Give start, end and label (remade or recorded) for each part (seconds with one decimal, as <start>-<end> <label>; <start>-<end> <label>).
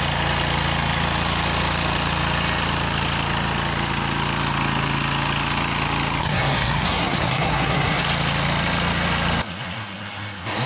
0.0-6.2 recorded; 6.2-8.0 remade; 8.0-10.7 recorded